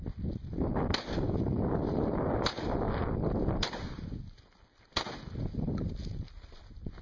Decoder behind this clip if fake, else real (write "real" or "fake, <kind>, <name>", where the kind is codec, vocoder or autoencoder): real